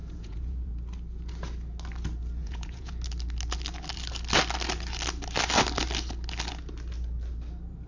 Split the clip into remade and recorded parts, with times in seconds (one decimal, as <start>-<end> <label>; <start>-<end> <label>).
0.0-0.7 remade; 0.7-2.4 recorded; 2.4-2.9 remade; 2.9-7.9 recorded

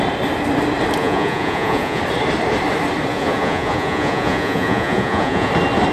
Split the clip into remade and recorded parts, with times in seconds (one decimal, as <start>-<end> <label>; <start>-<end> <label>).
0.0-1.0 recorded; 1.0-2.0 remade; 2.0-3.1 recorded; 3.1-5.5 remade; 5.5-5.9 recorded